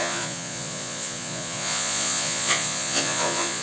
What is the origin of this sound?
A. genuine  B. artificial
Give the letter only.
B